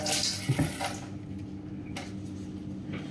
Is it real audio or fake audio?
real